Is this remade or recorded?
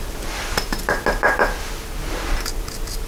recorded